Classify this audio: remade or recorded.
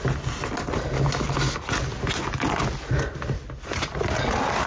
recorded